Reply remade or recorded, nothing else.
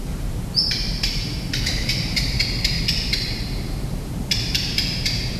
remade